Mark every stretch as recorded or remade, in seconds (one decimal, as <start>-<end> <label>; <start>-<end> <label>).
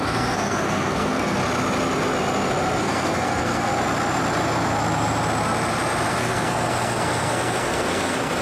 0.0-1.4 remade; 1.4-2.8 recorded; 2.8-3.7 remade; 3.7-6.1 recorded; 6.1-8.4 remade